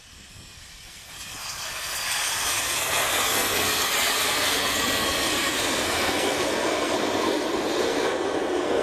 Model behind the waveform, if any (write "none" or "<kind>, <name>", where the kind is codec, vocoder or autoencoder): codec, SNAC